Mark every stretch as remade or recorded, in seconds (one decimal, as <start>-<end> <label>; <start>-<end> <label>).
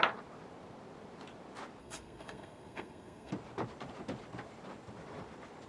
0.0-1.8 recorded; 1.8-3.3 remade; 3.3-5.7 recorded